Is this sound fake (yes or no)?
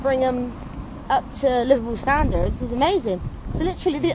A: no